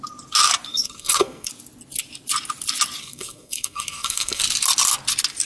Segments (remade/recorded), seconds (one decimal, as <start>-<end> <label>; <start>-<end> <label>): 0.0-0.7 recorded; 0.7-1.5 remade; 1.5-3.0 recorded; 3.0-4.4 remade; 4.4-5.4 recorded